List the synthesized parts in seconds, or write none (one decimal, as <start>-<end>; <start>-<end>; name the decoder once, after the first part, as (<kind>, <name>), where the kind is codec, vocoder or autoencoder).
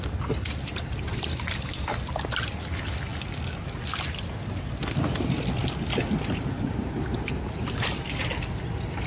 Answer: none